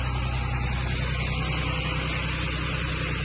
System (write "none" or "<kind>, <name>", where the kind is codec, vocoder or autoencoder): none